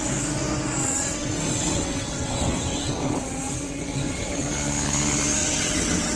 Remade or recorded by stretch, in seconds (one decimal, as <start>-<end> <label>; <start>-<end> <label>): 0.0-0.8 recorded; 0.8-4.5 remade; 4.5-5.4 recorded; 5.4-6.2 remade